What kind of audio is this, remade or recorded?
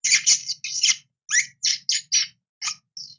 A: recorded